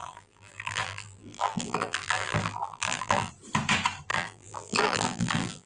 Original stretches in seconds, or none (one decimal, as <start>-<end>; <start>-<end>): 3.3-4.1